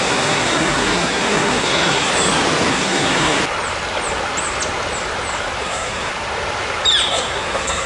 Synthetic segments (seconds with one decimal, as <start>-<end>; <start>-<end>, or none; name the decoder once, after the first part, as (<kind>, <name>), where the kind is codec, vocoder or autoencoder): 0.0-2.1 (codec, SNAC); 2.7-3.4; 5.6-6.1; 7.1-7.9